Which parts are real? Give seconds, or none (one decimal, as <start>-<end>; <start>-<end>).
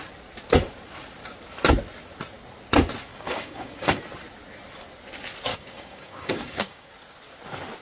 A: 0.0-3.1; 4.0-5.5; 6.9-7.8